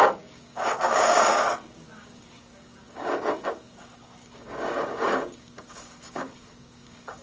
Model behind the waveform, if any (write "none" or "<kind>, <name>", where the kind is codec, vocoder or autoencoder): codec, DAC